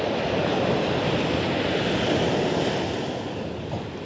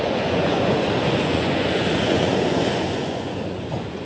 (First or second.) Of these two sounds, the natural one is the first